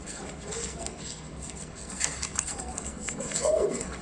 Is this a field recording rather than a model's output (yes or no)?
no